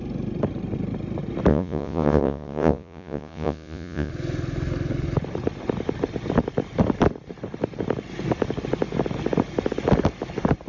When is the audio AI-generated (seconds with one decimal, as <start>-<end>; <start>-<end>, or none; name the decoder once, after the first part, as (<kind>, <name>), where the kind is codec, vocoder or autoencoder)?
1.5-4.1 (vocoder, Vocos)